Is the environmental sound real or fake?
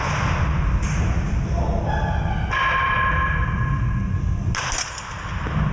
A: real